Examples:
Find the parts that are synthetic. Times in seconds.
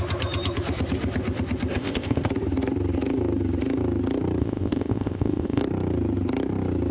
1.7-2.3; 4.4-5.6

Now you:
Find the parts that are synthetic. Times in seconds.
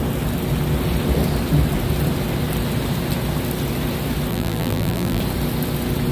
4.3-5.2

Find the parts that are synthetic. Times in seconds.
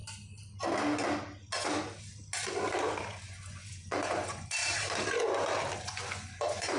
3.2-4.6; 5.8-6.8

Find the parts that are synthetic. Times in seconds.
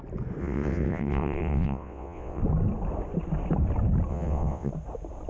0.4-2.4; 4.1-4.7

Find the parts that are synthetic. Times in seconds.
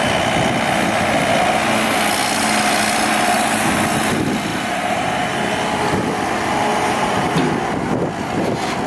4.5-5.4; 6.7-7.5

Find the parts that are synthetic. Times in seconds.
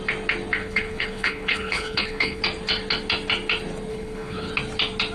0.6-2.4; 3.9-4.5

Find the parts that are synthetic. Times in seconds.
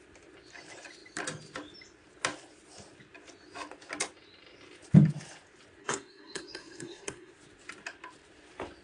5.8-7.3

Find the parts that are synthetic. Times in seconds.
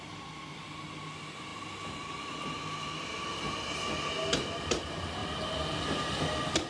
none